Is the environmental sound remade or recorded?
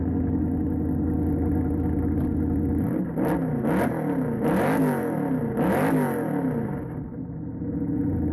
recorded